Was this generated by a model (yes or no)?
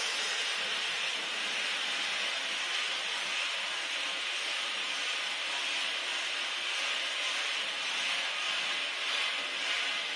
no